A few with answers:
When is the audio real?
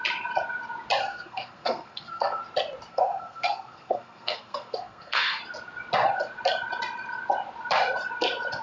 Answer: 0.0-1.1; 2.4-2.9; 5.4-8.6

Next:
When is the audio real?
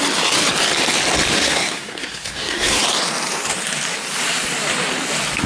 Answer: 0.0-1.4; 2.8-5.5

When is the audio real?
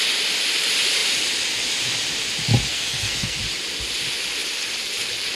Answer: 0.0-2.7; 3.4-5.3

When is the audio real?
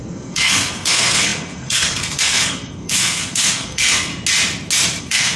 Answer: 4.1-5.0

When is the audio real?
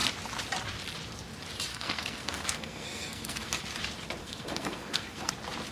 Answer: 0.0-1.7; 3.6-4.2; 5.3-5.7